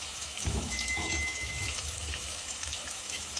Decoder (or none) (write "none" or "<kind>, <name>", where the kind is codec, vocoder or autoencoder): autoencoder, DAC-VAE